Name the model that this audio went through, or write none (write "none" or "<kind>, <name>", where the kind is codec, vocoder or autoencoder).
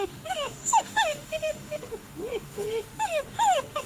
autoencoder, DAC-VAE